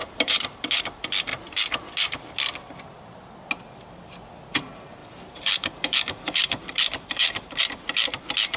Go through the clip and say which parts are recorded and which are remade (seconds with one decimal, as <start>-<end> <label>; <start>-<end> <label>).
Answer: 0.0-0.8 remade; 0.8-5.0 recorded; 5.0-7.6 remade; 7.6-8.6 recorded